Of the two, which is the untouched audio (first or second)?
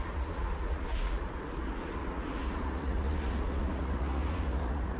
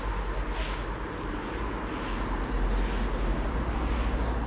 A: second